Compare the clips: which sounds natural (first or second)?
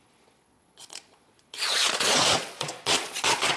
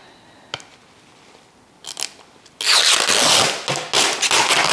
second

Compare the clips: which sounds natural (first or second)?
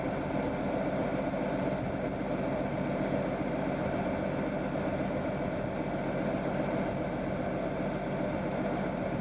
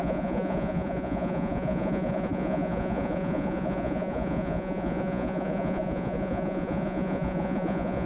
first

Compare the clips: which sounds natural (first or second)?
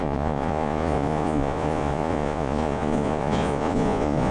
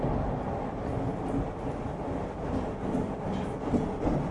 second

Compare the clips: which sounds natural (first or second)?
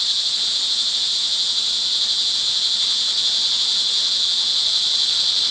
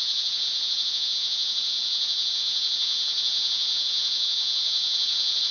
first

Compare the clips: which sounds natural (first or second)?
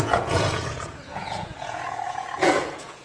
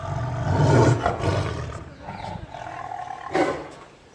second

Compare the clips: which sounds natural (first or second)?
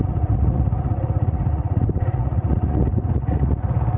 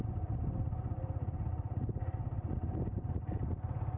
second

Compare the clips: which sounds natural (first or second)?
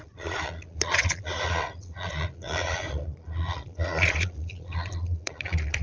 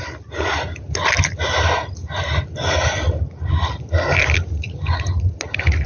second